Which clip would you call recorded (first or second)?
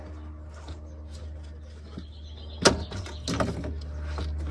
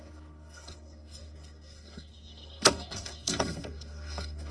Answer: first